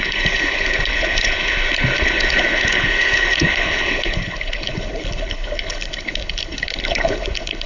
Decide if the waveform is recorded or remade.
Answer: remade